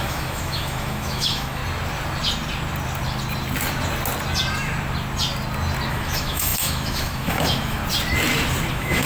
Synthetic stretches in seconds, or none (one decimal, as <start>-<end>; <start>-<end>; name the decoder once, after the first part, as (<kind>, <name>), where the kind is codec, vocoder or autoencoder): 0.0-1.6 (autoencoder, DAC-VAE); 5.9-7.8; 8.7-9.1

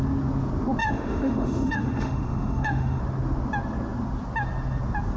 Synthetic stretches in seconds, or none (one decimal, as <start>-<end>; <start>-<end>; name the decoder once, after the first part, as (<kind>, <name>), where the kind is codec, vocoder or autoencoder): 0.8-3.0 (autoencoder, DAC-VAE)

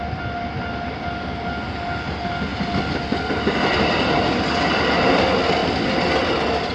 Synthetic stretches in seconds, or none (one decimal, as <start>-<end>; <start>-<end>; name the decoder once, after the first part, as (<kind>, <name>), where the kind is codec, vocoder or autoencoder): none

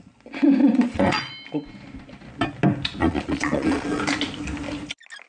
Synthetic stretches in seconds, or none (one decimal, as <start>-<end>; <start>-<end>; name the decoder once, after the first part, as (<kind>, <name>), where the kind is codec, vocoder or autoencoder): 0.6-1.3 (vocoder, Vocos); 3.0-4.0

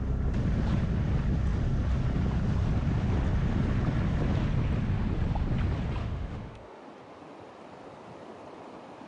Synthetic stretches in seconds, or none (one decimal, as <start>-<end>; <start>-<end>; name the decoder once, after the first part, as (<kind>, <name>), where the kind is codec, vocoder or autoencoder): 6.0-6.8 (autoencoder, DAC-VAE)

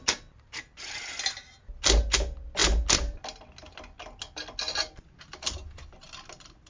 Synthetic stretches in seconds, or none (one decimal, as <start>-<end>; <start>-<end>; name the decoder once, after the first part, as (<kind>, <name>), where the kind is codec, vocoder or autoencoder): none